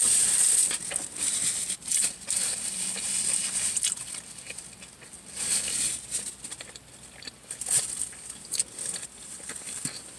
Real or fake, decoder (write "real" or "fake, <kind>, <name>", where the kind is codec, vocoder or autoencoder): real